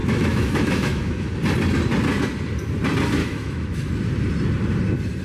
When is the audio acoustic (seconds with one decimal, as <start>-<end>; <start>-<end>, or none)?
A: 1.3-3.2; 3.9-5.2